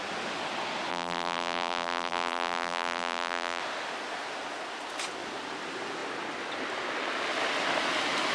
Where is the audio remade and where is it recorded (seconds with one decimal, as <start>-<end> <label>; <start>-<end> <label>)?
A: 0.0-0.9 recorded; 0.9-3.6 remade; 3.6-8.3 recorded